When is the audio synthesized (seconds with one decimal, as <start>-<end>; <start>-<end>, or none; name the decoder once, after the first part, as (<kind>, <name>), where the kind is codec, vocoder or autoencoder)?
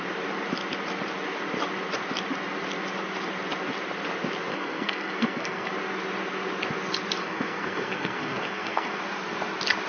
4.5-5.7 (codec, SNAC); 7.2-9.0